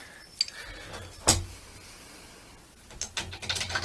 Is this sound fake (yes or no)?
no